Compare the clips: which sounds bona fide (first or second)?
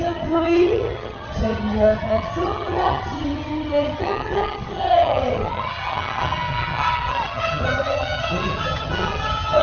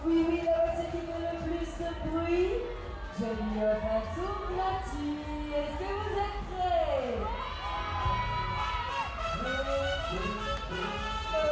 second